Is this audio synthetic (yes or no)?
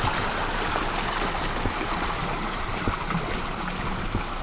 no